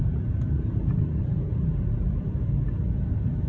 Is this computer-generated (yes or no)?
yes